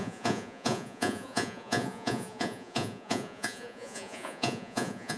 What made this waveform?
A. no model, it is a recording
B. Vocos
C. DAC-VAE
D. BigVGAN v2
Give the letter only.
B